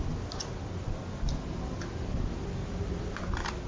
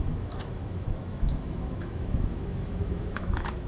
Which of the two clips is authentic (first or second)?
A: first